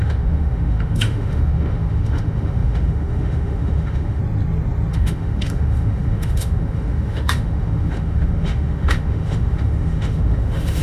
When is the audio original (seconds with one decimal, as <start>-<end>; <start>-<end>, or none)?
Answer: 4.2-4.9